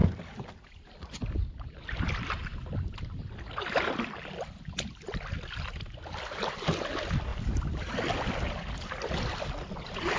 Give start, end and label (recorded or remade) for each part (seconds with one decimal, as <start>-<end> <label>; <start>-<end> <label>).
0.0-1.9 remade; 1.9-7.3 recorded; 7.3-9.1 remade; 9.1-10.2 recorded